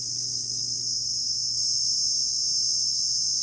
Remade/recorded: recorded